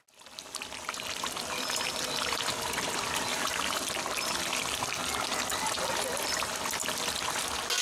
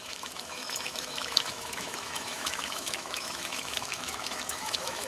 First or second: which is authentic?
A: first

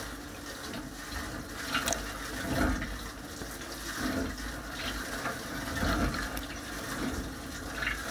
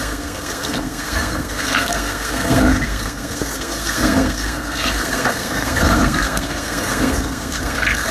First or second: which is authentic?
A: first